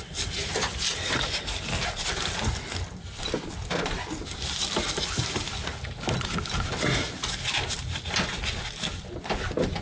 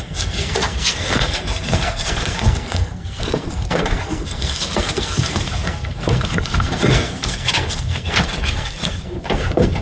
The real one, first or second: first